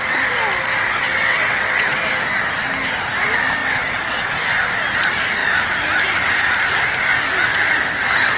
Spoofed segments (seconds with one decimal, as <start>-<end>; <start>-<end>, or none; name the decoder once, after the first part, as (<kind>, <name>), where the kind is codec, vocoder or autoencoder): 0.8-2.0 (vocoder, WaveNeXt); 3.6-4.3

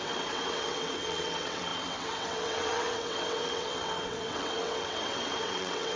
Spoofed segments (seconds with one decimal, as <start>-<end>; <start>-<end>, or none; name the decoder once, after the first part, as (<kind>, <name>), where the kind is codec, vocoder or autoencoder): 0.0-6.0 (vocoder, WaveNeXt)

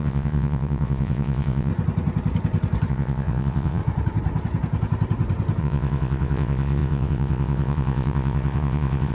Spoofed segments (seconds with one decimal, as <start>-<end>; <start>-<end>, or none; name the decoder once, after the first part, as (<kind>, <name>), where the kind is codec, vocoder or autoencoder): 0.0-1.7 (vocoder, WaveNeXt); 2.9-3.8; 5.6-9.1